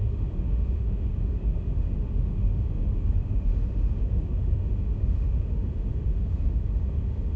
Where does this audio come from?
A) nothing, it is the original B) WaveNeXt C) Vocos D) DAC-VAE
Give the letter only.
D